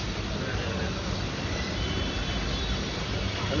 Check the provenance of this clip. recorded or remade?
remade